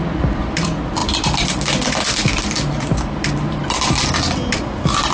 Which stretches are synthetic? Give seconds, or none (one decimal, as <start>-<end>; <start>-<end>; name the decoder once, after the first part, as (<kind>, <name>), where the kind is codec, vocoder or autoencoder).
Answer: 0.0-5.1 (vocoder, BigVGAN v2)